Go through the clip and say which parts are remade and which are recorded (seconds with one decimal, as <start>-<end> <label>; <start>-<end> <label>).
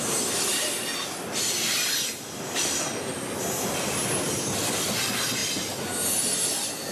0.0-6.9 recorded